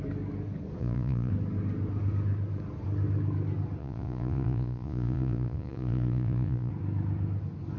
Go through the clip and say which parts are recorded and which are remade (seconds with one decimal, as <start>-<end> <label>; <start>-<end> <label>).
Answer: 0.0-0.8 recorded; 0.8-1.3 remade; 1.3-3.8 recorded; 3.8-6.7 remade; 6.7-7.8 recorded